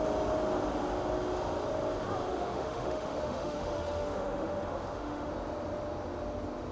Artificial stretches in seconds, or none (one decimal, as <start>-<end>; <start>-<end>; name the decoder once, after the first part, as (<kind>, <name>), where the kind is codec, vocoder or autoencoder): 2.3-5.3 (autoencoder, DAC-VAE)